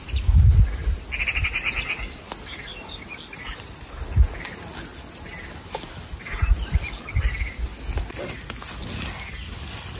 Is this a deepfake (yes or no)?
no